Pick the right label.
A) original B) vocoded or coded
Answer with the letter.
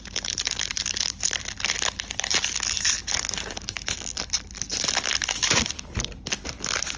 B